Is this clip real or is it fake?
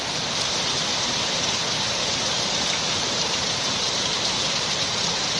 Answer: fake